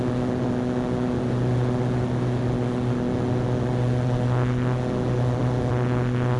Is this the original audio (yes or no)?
yes